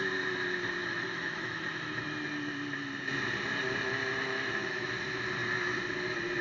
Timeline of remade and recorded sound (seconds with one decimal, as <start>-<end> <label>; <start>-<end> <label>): 0.0-0.8 recorded; 0.8-1.6 remade; 1.6-4.1 recorded; 4.1-5.0 remade; 5.0-6.4 recorded